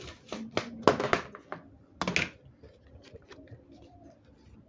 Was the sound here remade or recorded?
recorded